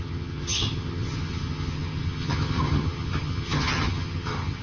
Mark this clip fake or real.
fake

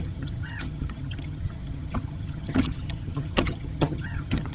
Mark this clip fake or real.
fake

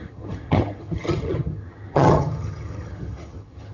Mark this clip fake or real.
fake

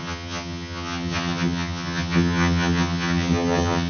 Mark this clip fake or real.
fake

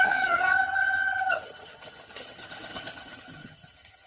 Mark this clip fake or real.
fake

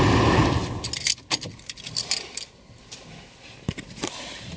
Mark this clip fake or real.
real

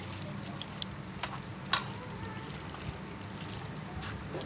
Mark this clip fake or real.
real